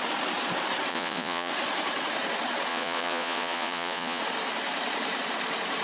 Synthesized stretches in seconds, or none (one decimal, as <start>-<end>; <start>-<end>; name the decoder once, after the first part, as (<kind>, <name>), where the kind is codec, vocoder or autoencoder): 0.9-1.5 (vocoder, Vocos); 2.7-4.2